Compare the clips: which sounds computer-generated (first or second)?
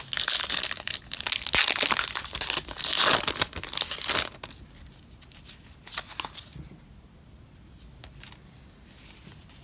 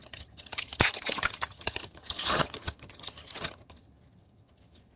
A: second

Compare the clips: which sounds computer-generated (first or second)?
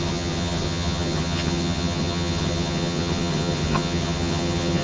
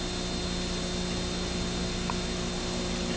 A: first